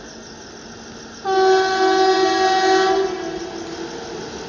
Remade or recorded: recorded